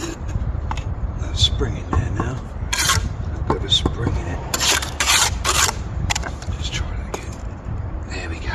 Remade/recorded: remade